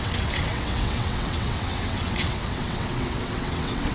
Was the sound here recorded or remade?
remade